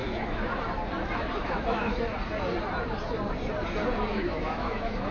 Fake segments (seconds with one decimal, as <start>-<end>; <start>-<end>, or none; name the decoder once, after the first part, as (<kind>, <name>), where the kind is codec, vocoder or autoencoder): 0.0-0.6 (autoencoder, DAC-VAE); 1.4-2.0; 4.1-5.1